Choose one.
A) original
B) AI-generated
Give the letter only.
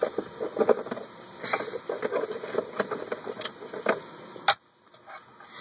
A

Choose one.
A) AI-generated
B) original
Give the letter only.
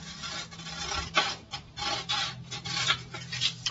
B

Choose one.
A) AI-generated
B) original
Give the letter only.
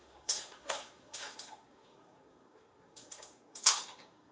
A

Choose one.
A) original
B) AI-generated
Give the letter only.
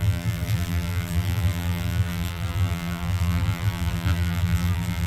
B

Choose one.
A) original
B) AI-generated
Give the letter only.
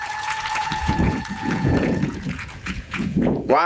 B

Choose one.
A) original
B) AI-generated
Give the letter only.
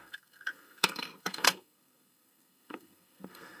B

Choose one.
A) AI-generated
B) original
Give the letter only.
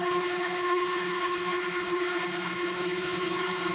A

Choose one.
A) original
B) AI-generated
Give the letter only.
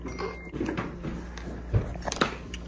A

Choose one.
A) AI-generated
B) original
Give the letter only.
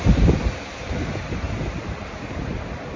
A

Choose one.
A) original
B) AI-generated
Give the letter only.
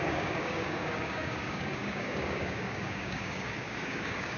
B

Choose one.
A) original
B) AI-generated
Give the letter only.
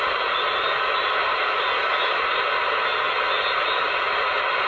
A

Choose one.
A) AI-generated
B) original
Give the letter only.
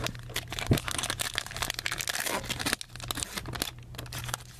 B